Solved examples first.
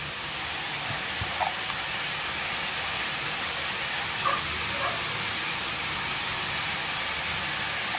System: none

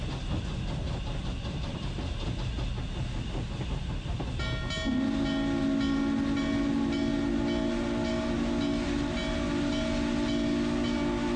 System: none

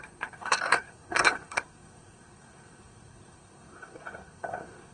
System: codec, SNAC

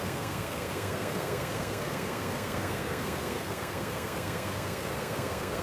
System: codec, SNAC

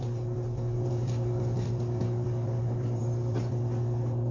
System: none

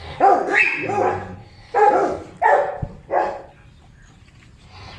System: none